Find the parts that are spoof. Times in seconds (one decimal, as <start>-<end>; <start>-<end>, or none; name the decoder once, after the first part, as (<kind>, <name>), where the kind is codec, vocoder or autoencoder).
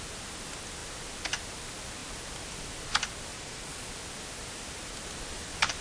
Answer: 3.3-3.9 (vocoder, Vocos)